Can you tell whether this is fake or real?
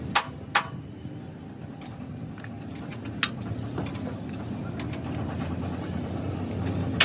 real